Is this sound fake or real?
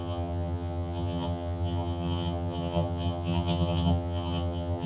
fake